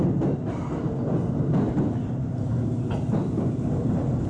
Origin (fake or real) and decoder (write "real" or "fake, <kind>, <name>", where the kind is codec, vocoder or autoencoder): real